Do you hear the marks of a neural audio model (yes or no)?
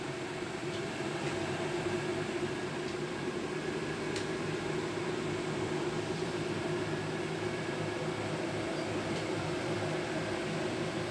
yes